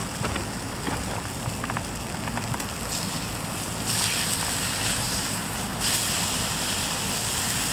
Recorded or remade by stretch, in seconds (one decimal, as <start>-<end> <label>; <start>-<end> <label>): 0.0-7.7 recorded